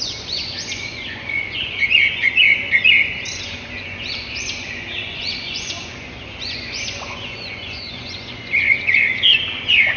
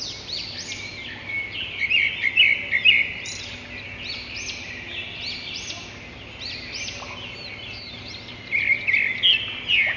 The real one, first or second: second